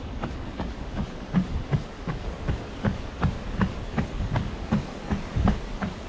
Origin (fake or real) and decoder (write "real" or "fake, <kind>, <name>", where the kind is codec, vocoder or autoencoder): fake, codec, DAC